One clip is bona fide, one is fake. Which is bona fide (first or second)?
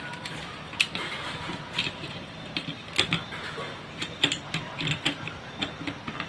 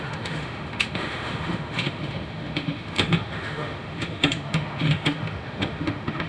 first